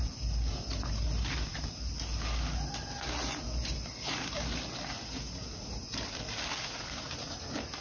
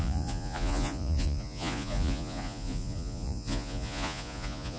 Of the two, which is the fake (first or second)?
second